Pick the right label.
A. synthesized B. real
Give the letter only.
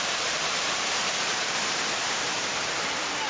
A